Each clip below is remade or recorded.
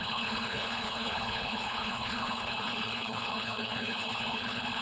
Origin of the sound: remade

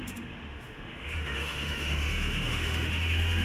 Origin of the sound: remade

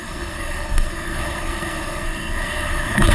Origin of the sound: remade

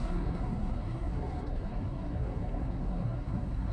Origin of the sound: remade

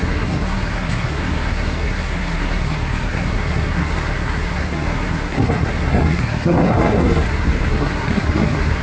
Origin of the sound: remade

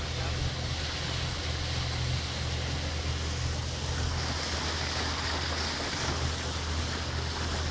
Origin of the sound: recorded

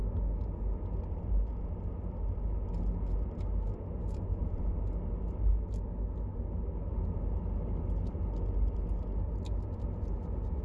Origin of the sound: recorded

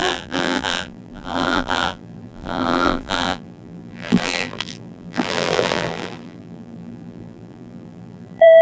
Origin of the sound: remade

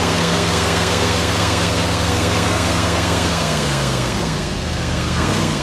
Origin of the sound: remade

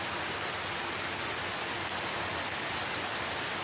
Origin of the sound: recorded